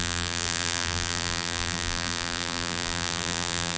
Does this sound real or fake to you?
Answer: fake